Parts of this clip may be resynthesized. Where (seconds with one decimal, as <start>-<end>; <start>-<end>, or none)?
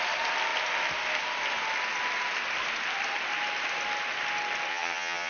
4.7-5.3